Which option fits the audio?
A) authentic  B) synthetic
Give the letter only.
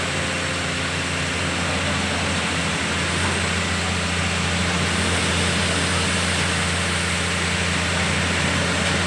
A